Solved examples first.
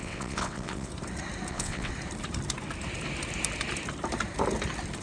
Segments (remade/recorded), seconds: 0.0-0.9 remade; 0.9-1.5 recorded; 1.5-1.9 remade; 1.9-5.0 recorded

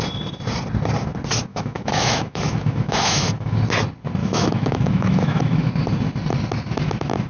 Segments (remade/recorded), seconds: 0.0-1.5 recorded; 1.5-3.6 remade; 3.6-4.2 recorded; 4.2-5.7 remade; 5.7-7.3 recorded

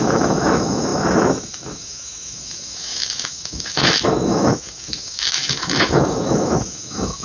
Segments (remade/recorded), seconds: 0.0-7.2 remade

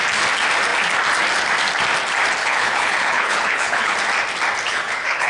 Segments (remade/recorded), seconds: 0.0-2.4 recorded; 2.4-3.9 remade; 3.9-4.7 recorded; 4.7-5.3 remade